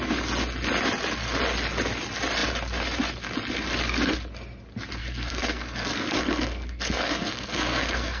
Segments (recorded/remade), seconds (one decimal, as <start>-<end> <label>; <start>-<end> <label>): 0.0-5.0 recorded; 5.0-8.2 remade